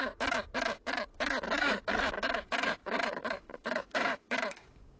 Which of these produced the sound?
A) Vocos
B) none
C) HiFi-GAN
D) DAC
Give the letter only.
D